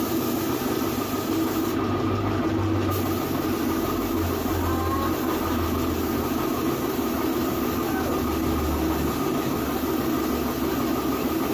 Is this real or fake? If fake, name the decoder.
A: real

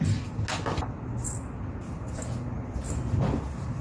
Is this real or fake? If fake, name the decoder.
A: real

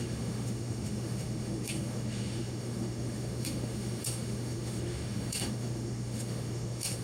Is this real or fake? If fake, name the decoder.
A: fake, autoencoder, DAC-VAE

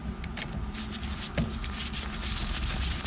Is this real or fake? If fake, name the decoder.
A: real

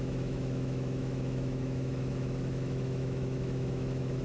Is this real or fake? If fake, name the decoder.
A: fake, autoencoder, DAC-VAE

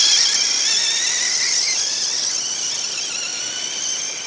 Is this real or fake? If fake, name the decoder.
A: real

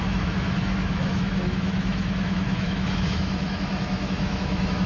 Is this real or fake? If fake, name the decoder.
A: fake, autoencoder, DAC-VAE